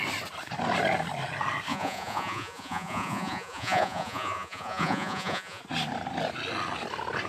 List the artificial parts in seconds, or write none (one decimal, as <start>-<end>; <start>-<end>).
1.7-5.6